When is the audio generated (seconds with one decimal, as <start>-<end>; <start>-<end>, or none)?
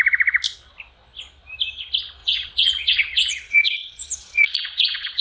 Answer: 2.2-5.2